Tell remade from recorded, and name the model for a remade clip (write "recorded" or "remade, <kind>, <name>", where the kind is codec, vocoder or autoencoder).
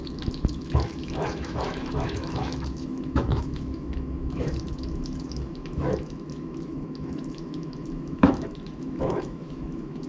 remade, autoencoder, DAC-VAE